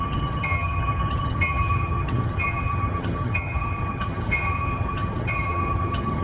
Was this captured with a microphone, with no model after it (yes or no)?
no